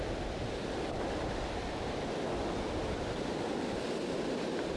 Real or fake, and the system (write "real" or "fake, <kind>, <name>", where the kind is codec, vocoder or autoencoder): real